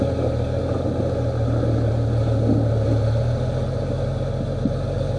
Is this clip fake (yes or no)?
no